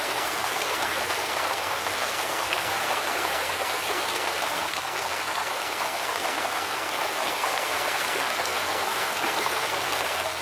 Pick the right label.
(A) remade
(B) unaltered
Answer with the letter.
A